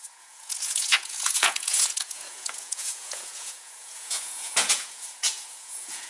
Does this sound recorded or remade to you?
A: remade